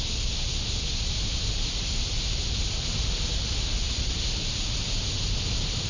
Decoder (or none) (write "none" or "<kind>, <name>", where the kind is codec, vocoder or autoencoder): none